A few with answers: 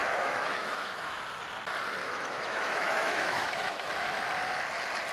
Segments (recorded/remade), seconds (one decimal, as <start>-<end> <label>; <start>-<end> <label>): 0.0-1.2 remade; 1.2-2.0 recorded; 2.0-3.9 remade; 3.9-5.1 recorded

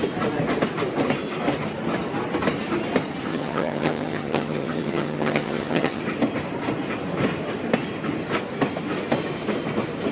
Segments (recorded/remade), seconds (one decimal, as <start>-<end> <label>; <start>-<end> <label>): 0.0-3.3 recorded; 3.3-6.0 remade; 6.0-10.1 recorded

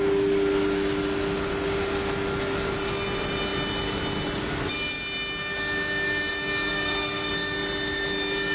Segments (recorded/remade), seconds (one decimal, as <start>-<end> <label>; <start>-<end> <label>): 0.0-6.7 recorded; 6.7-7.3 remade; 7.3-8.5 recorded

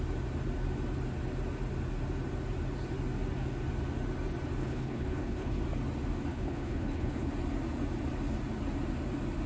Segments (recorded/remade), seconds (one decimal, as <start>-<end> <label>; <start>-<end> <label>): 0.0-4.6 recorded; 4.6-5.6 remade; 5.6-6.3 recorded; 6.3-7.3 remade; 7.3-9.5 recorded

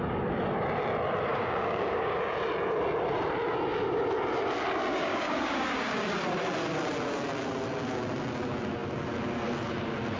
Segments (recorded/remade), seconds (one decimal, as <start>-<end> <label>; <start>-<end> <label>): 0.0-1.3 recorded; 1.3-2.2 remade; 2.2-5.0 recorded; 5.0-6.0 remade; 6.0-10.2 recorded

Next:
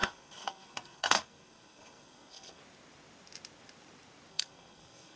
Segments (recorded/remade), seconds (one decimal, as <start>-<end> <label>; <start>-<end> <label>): 0.0-2.6 remade; 2.6-4.3 recorded; 4.3-5.2 remade

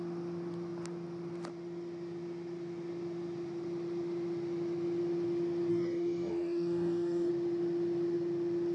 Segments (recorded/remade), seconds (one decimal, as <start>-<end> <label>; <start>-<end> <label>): 0.0-5.7 recorded; 5.7-7.3 remade; 7.3-8.7 recorded

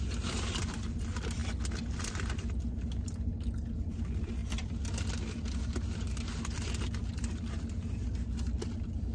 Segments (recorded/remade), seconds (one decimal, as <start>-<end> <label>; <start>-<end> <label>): 0.0-9.1 recorded